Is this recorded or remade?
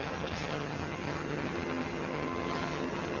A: remade